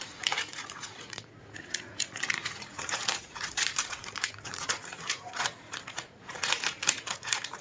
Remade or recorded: remade